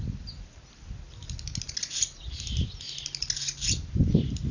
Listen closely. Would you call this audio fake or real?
real